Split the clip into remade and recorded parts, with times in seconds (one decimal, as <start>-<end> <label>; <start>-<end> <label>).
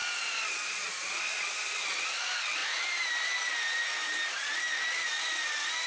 0.0-5.9 recorded